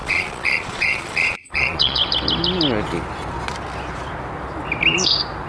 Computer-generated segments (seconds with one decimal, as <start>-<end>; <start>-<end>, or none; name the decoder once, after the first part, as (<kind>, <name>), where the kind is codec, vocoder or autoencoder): 0.0-2.0 (vocoder, Vocos)